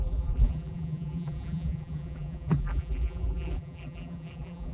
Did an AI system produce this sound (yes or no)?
yes